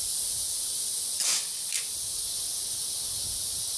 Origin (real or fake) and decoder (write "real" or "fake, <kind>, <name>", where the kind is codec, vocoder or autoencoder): real